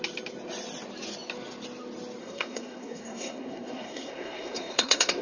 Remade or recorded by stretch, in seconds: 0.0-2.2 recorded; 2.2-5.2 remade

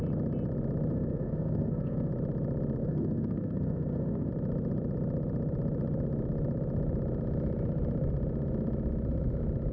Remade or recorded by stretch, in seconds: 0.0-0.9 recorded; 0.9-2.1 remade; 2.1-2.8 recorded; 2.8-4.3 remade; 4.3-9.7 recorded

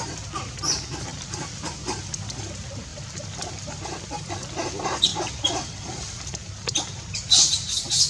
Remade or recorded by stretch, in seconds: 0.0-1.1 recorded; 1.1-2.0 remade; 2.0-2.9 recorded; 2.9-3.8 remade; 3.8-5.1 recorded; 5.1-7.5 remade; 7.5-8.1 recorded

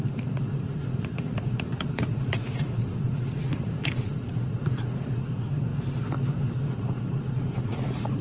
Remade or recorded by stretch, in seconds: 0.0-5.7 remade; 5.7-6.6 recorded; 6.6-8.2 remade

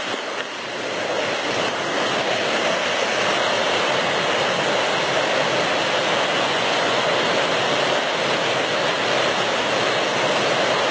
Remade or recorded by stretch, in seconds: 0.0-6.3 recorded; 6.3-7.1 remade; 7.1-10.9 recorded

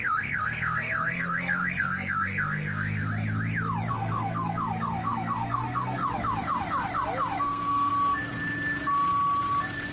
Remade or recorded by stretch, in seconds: 0.0-3.0 remade; 3.0-3.9 recorded; 3.9-6.0 remade; 6.0-7.4 recorded; 7.4-7.9 remade; 7.9-9.9 recorded

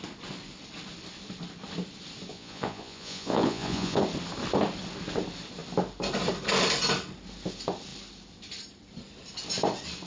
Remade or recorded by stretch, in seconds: 0.0-2.3 recorded; 2.3-4.0 remade; 4.0-10.1 recorded